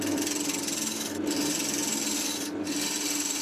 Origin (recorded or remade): recorded